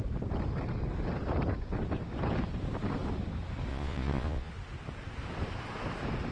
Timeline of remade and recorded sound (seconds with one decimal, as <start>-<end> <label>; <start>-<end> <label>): 0.0-3.7 recorded; 3.7-4.5 remade; 4.5-6.3 recorded